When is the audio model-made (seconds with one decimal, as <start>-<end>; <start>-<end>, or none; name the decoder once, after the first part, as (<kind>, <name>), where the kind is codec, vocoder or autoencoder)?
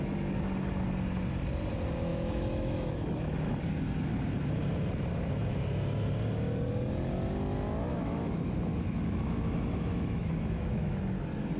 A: 2.1-3.6 (autoencoder, DAC-VAE); 7.9-11.0